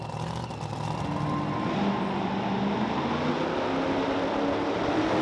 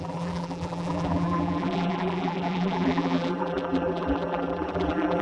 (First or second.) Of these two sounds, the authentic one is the first